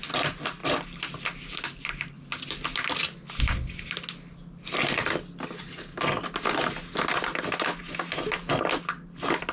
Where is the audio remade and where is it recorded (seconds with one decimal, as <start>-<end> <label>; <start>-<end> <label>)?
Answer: 0.0-9.5 recorded